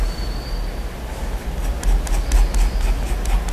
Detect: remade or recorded recorded